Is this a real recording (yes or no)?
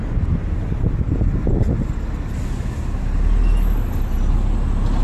yes